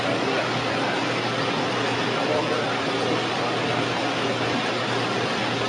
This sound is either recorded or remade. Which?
recorded